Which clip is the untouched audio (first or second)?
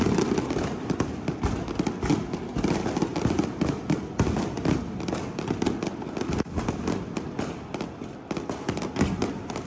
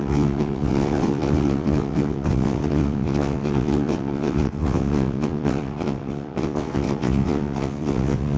first